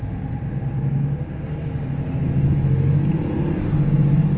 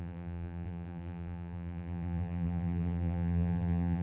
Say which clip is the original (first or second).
first